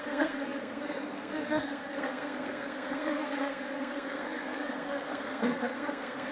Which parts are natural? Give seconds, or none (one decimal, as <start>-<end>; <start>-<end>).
none